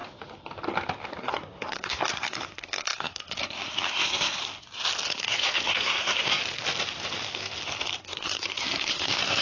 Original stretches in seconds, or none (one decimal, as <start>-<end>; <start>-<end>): 0.0-1.2; 4.4-5.1; 6.4-8.0